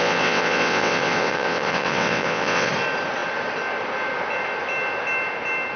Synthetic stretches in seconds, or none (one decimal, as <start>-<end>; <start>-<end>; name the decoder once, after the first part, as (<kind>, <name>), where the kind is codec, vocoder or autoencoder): 0.0-2.7 (vocoder, WaveNeXt)